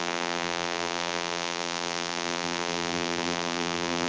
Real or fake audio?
fake